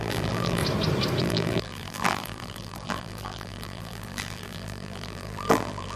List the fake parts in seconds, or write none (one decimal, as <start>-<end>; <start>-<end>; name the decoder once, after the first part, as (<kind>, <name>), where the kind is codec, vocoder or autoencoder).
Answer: 0.0-0.6 (vocoder, BigVGAN v2); 1.2-6.0